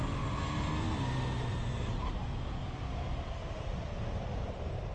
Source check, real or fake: real